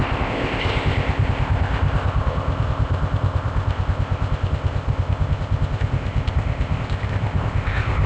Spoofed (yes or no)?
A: yes